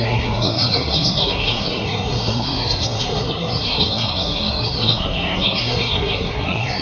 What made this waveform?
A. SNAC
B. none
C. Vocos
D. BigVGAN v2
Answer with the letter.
A